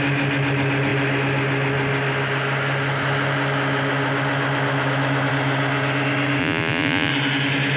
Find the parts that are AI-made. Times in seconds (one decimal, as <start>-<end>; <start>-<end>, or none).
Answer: 6.4-7.1